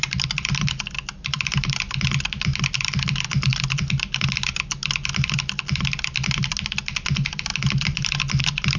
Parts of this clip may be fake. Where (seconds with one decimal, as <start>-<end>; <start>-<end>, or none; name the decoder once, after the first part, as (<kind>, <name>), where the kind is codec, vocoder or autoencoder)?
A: none